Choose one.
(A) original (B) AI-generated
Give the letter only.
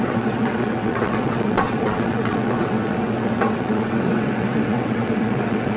B